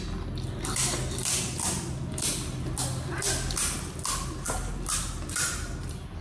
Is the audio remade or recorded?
recorded